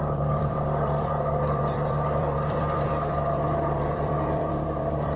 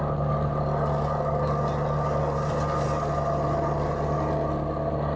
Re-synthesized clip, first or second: first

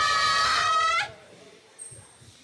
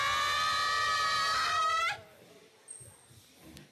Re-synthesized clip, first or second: first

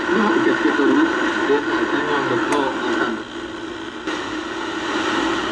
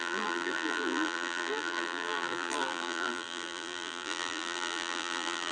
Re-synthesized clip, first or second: second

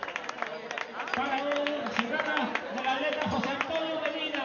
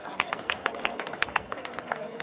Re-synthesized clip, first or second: second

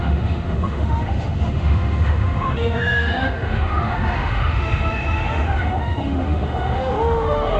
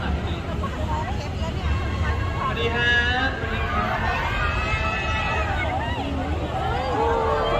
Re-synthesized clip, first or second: first